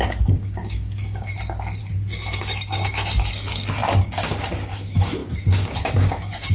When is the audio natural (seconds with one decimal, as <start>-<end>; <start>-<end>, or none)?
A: 1.8-2.4